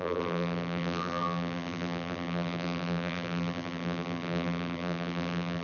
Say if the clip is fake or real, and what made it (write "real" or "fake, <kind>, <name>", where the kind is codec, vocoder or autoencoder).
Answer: fake, vocoder, BigVGAN v2